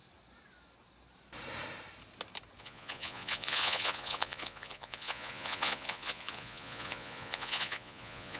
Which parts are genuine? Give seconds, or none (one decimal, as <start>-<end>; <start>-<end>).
0.0-2.6